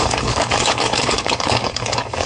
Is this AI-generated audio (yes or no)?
yes